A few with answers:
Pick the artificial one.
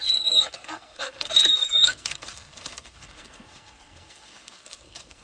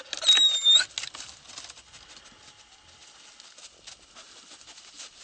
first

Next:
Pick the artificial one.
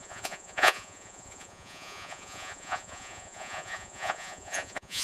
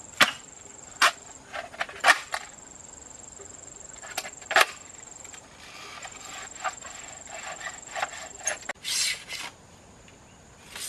first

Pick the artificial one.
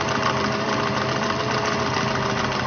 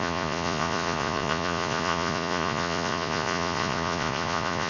second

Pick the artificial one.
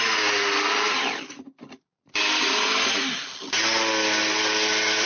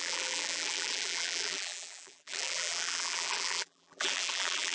second